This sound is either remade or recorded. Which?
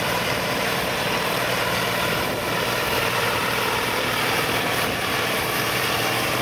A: remade